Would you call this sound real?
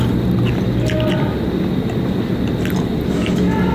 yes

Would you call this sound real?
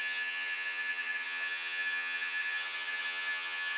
no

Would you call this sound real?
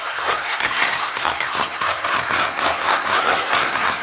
no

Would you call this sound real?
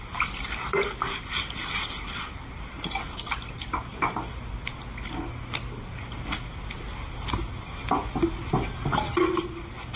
yes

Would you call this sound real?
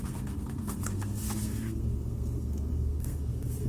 no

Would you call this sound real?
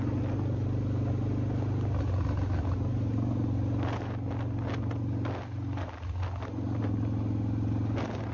yes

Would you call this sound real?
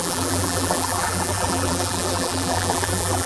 no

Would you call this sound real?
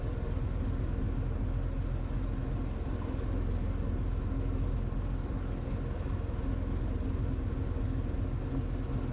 yes